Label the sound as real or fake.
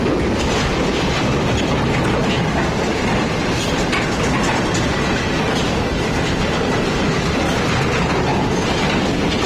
real